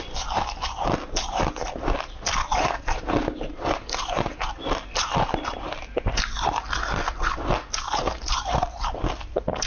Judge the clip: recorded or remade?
recorded